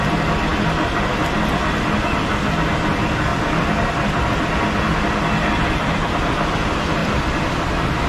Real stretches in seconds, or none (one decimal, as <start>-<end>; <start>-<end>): 0.0-7.0; 7.6-8.1